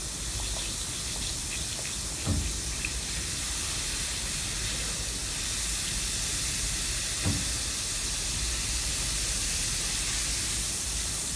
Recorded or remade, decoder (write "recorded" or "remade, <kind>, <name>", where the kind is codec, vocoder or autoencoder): recorded